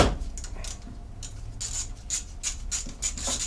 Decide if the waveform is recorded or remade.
recorded